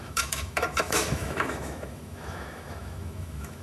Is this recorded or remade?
remade